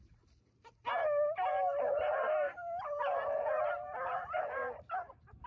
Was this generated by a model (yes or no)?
no